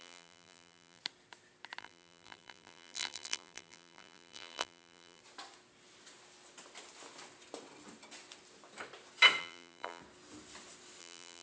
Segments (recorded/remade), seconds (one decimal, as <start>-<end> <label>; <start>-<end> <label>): 0.0-1.0 remade; 1.0-1.8 recorded; 1.8-5.2 remade; 5.2-9.4 recorded; 9.4-10.0 remade; 10.0-11.0 recorded; 11.0-11.4 remade